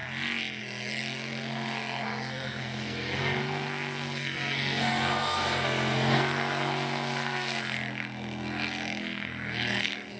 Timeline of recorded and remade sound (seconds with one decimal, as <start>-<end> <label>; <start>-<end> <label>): 0.0-0.6 recorded; 0.6-10.2 remade